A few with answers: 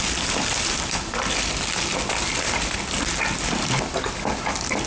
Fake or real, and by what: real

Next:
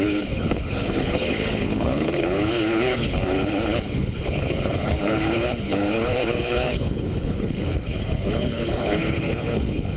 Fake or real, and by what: fake, codec, HILCodec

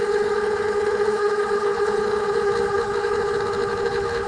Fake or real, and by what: fake, codec, HILCodec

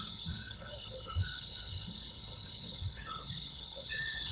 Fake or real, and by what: fake, codec, HILCodec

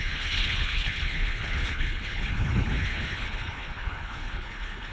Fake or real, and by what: fake, codec, HILCodec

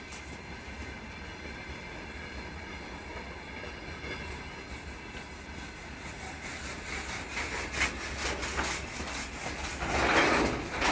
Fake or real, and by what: real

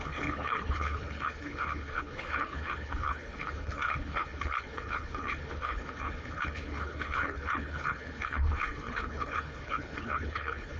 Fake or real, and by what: fake, codec, HILCodec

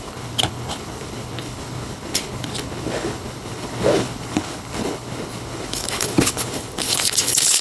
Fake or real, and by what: fake, codec, HILCodec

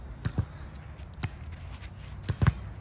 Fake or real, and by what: real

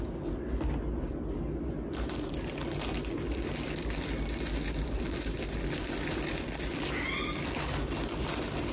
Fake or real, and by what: real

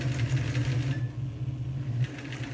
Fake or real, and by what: real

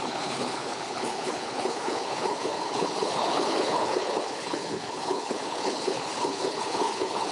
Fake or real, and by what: fake, codec, HILCodec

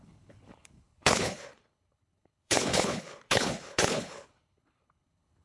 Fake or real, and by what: fake, codec, HILCodec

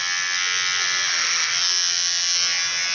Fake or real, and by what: real